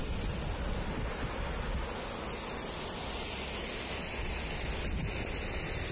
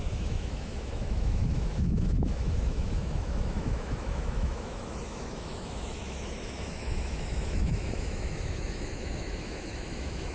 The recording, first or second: first